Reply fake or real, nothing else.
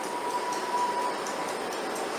real